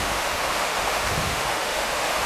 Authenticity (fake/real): fake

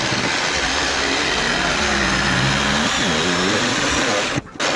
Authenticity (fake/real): real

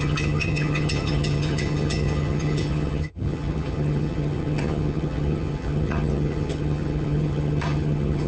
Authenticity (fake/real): fake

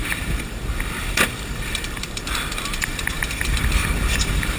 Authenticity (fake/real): fake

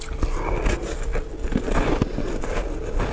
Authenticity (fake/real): real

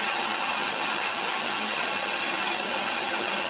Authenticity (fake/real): fake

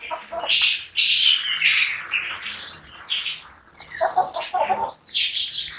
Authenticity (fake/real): real